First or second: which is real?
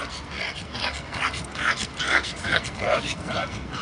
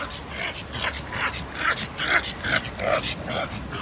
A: second